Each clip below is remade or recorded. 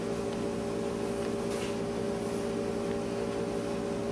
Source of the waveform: recorded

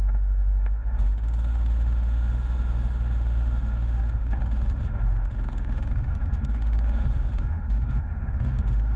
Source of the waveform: remade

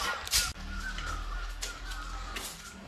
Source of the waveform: recorded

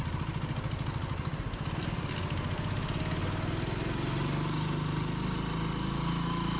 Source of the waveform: recorded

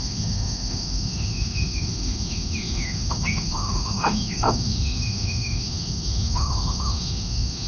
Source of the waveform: remade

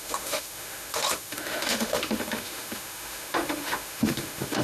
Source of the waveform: remade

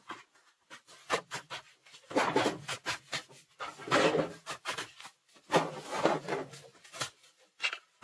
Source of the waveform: recorded